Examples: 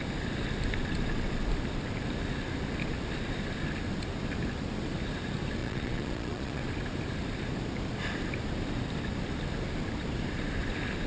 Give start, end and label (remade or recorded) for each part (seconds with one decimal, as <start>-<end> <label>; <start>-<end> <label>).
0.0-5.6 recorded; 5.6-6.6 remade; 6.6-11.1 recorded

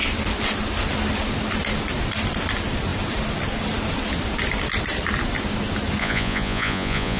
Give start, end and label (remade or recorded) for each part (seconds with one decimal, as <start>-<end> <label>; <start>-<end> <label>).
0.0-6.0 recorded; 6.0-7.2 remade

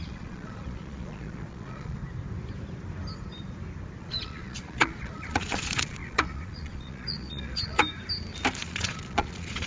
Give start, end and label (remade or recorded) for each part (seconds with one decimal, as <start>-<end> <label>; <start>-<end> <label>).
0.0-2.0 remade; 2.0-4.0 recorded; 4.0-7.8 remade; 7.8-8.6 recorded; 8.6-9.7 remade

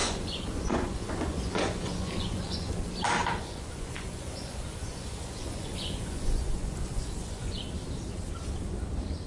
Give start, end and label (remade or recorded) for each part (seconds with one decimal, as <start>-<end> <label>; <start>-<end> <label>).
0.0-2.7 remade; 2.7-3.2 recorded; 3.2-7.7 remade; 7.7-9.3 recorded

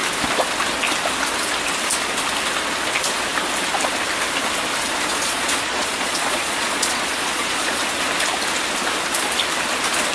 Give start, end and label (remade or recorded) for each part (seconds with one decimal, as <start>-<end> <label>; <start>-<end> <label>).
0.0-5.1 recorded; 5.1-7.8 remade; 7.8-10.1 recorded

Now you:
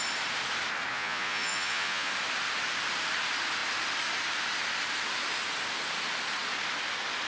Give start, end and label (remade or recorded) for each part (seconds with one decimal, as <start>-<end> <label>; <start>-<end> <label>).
0.0-0.9 recorded; 0.9-2.1 remade; 2.1-7.3 recorded

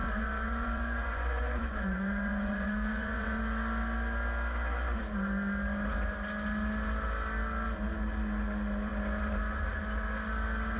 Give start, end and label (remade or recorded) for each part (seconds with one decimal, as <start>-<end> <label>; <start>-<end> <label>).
0.0-3.4 remade; 3.4-10.8 recorded

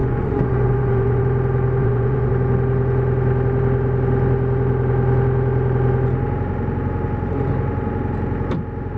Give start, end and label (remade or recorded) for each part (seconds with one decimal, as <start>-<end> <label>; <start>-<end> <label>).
0.0-1.2 remade; 1.2-1.8 recorded; 1.8-2.3 remade; 2.3-9.0 recorded